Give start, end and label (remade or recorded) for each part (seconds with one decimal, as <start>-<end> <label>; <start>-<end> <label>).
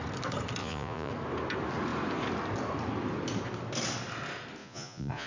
0.0-0.6 recorded; 0.6-1.1 remade; 1.1-4.6 recorded; 4.6-5.3 remade